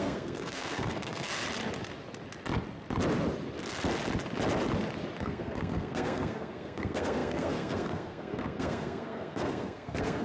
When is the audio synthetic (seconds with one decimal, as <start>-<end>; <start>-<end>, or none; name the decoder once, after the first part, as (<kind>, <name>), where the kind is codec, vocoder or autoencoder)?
0.0-1.3 (codec, SNAC); 5.2-10.2